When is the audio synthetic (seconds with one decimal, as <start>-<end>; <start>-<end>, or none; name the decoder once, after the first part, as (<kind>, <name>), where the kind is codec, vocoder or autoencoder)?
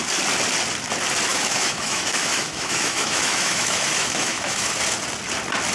1.3-4.7 (autoencoder, DAC-VAE)